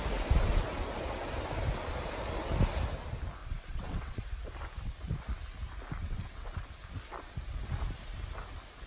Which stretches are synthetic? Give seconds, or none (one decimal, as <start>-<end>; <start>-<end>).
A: 3.4-4.2; 6.0-6.6